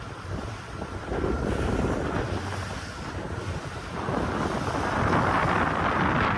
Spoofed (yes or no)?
no